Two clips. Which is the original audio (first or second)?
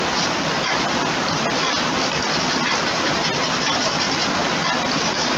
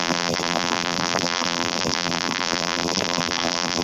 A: first